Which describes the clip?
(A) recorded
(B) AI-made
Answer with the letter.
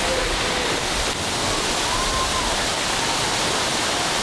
A